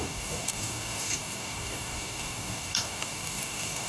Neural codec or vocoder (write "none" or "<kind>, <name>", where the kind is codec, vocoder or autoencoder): codec, DAC